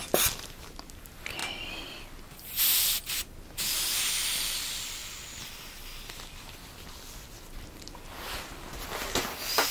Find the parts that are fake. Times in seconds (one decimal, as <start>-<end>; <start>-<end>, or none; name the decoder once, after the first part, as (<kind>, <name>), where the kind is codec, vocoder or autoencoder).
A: none